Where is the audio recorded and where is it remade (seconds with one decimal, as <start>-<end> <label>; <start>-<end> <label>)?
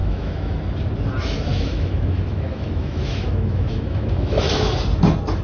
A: 0.0-0.6 remade; 0.6-1.5 recorded; 1.5-4.7 remade; 4.7-5.4 recorded